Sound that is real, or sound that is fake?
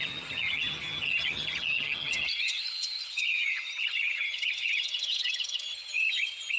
fake